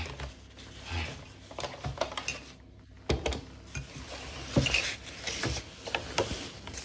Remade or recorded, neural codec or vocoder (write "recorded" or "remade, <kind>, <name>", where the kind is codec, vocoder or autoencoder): recorded